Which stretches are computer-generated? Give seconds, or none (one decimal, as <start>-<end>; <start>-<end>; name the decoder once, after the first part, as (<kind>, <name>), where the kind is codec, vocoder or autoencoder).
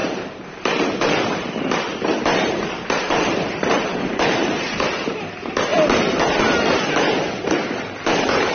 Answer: 0.0-5.7 (vocoder, BigVGAN v2); 7.3-8.5